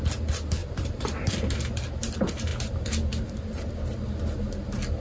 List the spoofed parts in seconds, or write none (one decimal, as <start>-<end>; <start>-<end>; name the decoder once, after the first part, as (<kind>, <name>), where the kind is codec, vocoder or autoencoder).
0.6-1.3 (vocoder, BigVGAN v2); 2.5-3.7